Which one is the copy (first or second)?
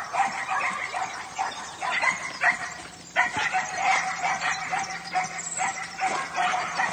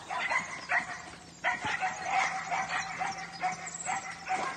first